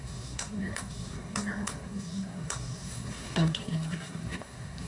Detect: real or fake fake